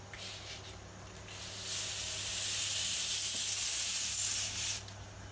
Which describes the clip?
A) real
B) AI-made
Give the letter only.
A